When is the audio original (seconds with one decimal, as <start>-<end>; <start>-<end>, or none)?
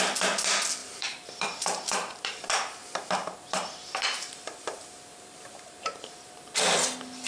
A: 0.0-0.8; 2.4-2.8; 6.3-7.3